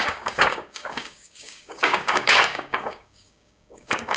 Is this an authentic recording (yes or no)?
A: no